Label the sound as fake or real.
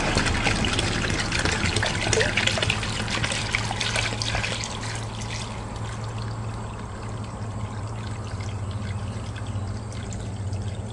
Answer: real